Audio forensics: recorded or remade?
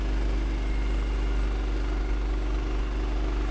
recorded